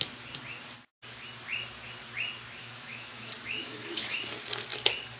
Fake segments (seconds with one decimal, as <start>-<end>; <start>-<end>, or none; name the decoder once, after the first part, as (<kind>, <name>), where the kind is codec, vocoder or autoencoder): 2.6-4.2 (autoencoder, DAC-VAE)